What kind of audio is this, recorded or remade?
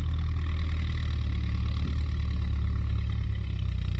recorded